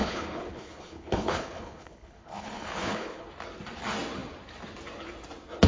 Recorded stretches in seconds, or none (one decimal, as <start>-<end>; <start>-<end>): 3.3-5.7